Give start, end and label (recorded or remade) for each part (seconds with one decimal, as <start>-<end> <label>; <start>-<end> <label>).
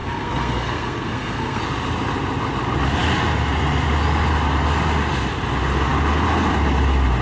0.0-1.6 remade; 1.6-7.2 recorded